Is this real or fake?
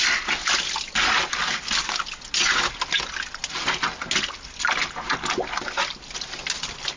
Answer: real